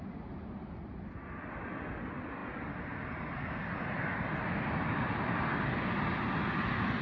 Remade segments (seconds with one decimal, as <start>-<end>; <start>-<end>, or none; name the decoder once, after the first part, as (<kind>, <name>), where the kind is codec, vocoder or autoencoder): none